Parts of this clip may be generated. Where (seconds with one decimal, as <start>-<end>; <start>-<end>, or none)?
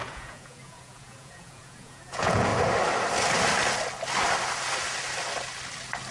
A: 0.0-2.5